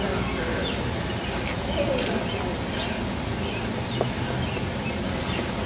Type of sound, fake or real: real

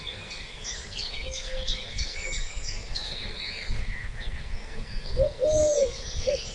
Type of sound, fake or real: fake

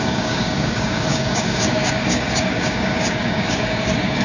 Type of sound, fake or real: fake